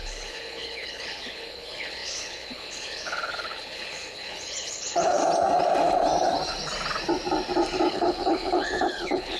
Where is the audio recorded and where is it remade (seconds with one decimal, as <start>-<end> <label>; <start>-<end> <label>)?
0.0-5.2 remade; 5.2-7.9 recorded; 7.9-9.4 remade